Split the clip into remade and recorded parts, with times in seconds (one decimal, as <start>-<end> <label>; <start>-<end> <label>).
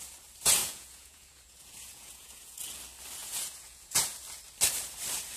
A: 0.0-0.6 recorded; 0.6-2.6 remade; 2.6-3.2 recorded; 3.2-4.0 remade; 4.0-5.4 recorded